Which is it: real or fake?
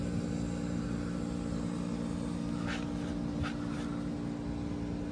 real